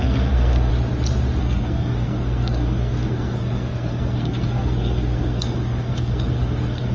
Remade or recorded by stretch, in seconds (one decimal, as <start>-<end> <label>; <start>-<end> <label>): 0.0-0.7 remade; 0.7-1.4 recorded; 1.4-6.9 remade